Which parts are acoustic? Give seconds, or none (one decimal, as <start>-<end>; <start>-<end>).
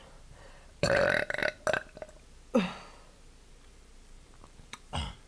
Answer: 1.4-3.5